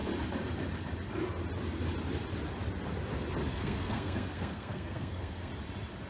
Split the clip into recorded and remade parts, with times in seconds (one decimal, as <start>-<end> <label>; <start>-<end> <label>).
0.0-3.5 recorded; 3.5-5.5 remade; 5.5-6.1 recorded